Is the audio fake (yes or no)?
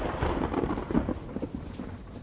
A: no